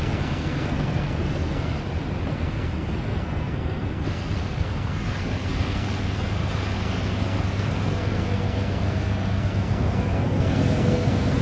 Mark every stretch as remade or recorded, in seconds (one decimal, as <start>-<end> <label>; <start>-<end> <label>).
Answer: 0.0-1.8 remade; 1.8-2.3 recorded; 2.3-11.4 remade